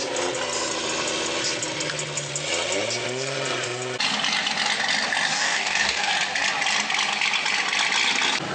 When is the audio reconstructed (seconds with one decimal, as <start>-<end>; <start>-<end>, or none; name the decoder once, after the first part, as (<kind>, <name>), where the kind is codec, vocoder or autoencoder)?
5.3-6.1 (codec, DAC)